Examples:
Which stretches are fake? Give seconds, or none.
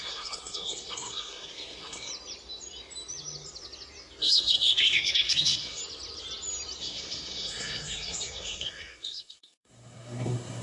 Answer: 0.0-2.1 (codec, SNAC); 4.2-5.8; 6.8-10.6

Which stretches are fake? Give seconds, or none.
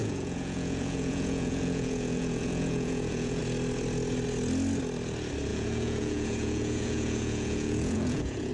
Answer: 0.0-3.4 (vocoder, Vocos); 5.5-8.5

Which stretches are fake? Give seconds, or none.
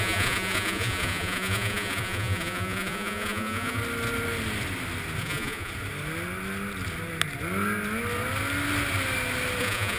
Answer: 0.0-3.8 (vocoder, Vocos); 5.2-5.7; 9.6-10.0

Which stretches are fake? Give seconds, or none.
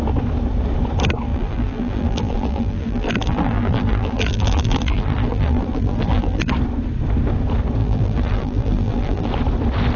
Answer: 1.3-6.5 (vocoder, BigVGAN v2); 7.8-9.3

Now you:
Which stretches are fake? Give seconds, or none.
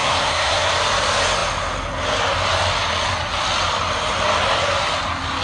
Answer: 0.0-0.7 (codec, SNAC)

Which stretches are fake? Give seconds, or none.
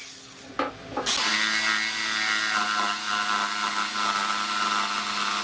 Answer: none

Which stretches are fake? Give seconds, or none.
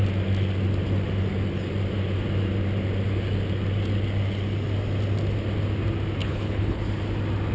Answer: 6.2-6.8 (codec, HILCodec)